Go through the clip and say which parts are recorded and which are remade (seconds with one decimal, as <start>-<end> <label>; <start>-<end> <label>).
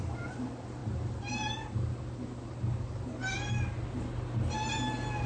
0.0-5.3 recorded